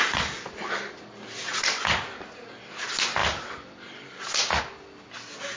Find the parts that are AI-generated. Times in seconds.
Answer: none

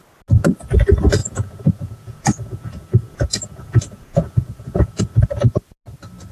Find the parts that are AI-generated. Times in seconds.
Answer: 1.2-5.0 (vocoder, Vocos)

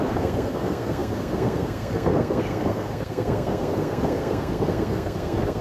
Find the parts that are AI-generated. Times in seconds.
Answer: 0.0-5.6 (codec, SNAC)

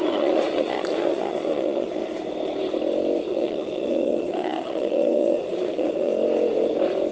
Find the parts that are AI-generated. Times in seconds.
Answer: 0.0-2.0 (vocoder, Vocos); 3.2-6.1